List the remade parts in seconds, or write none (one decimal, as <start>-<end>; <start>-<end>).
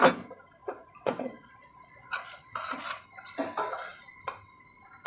0.6-3.0